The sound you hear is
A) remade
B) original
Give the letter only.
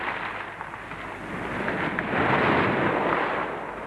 B